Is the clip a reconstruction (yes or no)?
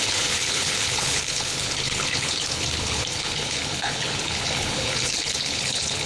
yes